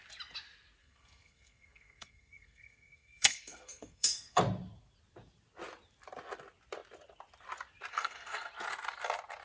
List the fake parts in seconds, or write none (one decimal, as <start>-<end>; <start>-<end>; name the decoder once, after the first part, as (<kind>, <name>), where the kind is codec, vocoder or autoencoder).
0.8-4.4 (codec, SNAC); 7.9-8.5